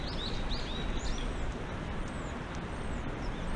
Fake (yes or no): no